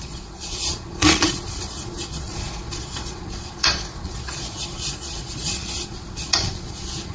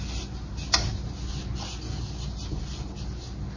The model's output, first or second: first